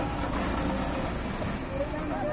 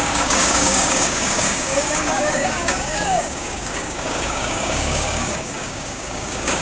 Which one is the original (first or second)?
first